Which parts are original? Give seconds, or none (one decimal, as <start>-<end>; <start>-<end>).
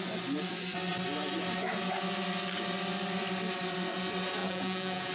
0.0-4.4